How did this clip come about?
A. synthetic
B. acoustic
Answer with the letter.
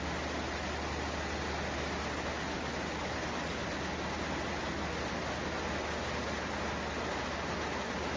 B